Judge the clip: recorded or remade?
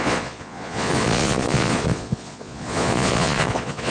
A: remade